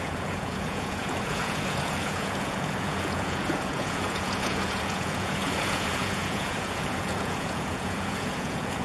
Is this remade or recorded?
remade